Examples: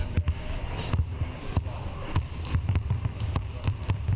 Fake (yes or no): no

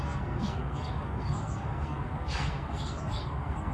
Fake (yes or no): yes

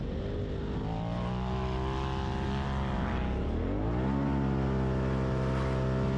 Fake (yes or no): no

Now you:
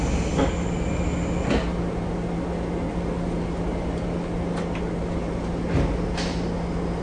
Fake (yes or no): no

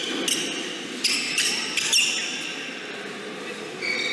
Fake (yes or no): no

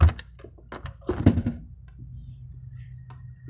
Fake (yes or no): no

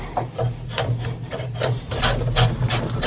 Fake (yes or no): no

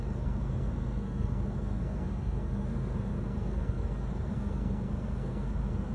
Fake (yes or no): yes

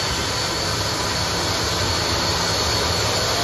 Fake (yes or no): no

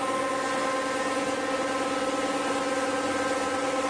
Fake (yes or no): no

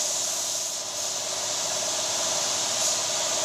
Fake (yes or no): no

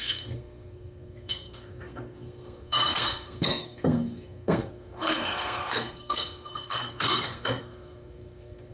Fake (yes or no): yes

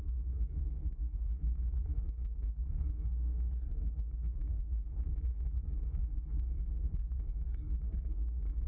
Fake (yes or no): yes